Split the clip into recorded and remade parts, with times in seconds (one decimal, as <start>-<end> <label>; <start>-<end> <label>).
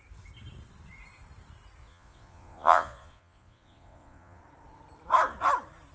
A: 0.0-1.8 recorded; 1.8-4.4 remade; 4.4-5.9 recorded